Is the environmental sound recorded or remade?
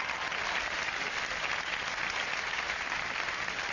recorded